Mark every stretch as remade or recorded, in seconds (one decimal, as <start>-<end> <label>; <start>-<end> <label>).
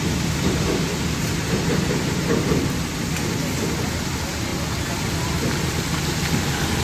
0.0-6.8 recorded